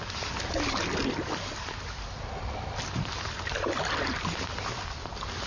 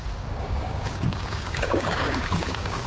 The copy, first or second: second